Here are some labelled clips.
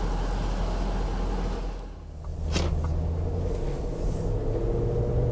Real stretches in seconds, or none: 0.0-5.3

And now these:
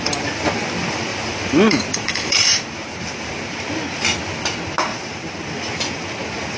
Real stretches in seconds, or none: 0.0-1.1; 3.3-4.9; 5.5-6.6